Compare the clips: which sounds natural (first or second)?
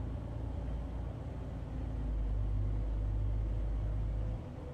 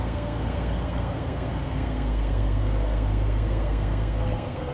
first